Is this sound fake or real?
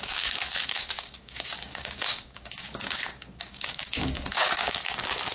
fake